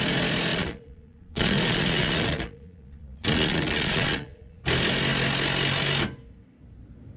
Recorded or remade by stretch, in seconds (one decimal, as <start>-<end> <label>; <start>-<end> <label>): 0.0-0.5 recorded; 0.5-4.6 remade; 4.6-7.2 recorded